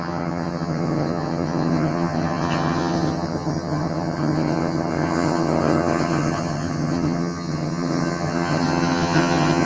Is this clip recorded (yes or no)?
no